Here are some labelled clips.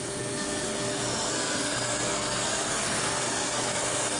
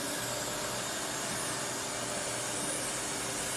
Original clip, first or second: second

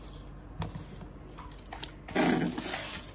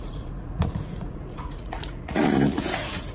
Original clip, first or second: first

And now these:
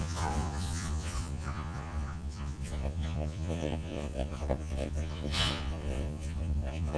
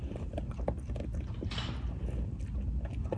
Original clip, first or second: second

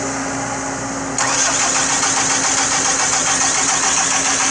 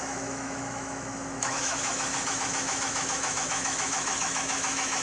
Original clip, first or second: first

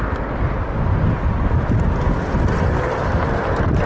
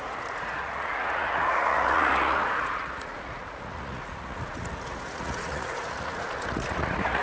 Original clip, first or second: first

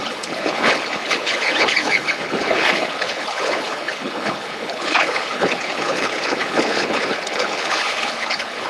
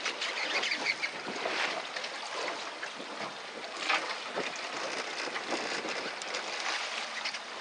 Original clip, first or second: second